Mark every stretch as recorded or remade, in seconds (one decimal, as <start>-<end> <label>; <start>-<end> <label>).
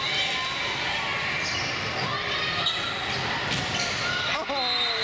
0.0-5.0 recorded